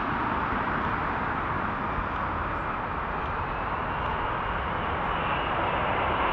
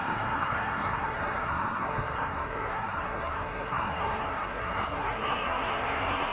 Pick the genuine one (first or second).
first